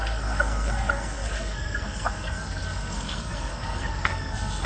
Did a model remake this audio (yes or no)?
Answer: yes